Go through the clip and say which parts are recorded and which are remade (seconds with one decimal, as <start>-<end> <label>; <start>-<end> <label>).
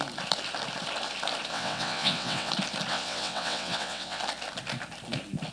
0.0-1.5 recorded; 1.5-2.5 remade; 2.5-2.9 recorded; 2.9-4.2 remade; 4.2-5.5 recorded